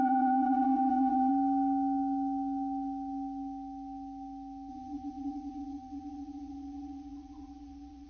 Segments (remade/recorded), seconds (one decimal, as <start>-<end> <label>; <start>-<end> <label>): 0.0-1.3 remade; 1.3-4.7 recorded; 4.7-8.1 remade